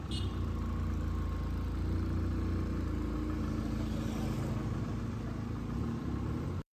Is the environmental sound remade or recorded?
recorded